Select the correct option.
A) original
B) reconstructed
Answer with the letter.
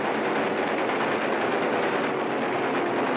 A